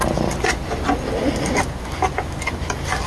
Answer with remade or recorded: recorded